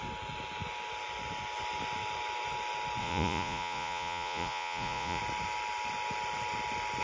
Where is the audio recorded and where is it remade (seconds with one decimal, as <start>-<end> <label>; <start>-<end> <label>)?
0.0-3.0 recorded; 3.0-5.2 remade; 5.2-7.0 recorded